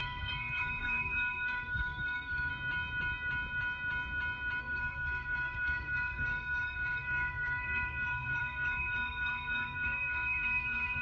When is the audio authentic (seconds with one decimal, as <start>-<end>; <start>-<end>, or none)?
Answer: 2.5-4.6